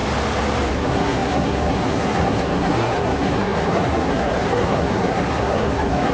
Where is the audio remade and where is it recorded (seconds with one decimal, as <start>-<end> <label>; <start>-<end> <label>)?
0.0-0.7 recorded; 0.7-6.1 remade